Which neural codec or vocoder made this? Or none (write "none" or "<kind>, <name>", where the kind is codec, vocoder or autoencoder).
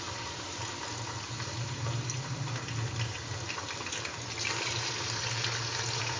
none